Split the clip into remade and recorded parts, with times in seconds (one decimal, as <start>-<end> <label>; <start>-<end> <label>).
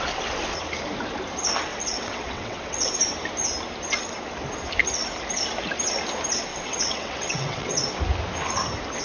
0.0-1.7 recorded; 1.7-2.9 remade; 2.9-6.5 recorded; 6.5-7.8 remade; 7.8-9.0 recorded